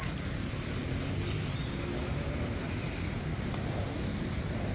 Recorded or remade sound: recorded